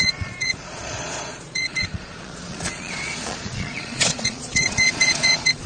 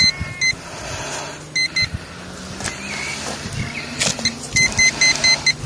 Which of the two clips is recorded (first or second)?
second